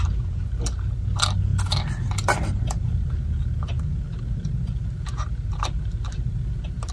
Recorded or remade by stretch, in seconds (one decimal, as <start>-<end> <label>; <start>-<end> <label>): 0.0-6.9 recorded